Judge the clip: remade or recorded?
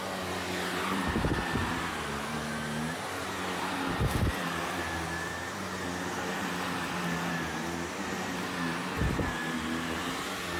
recorded